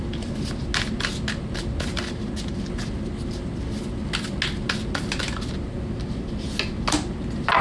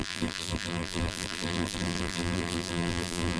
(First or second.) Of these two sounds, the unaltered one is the first